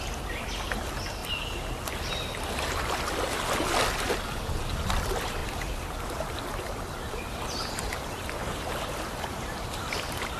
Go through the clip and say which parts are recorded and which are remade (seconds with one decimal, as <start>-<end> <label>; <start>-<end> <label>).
0.0-5.4 recorded; 5.4-10.4 remade